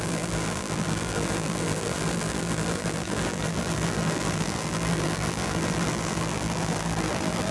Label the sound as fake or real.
fake